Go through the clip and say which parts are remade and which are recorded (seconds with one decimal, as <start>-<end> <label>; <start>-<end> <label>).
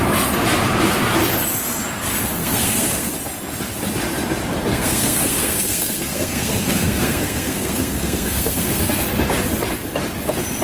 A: 0.0-2.4 recorded; 2.4-3.1 remade; 3.1-4.7 recorded; 4.7-9.0 remade; 9.0-10.6 recorded